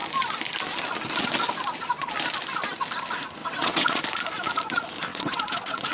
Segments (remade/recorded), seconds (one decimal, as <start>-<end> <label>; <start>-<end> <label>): 0.0-3.4 recorded; 3.4-4.0 remade; 4.0-5.1 recorded; 5.1-5.9 remade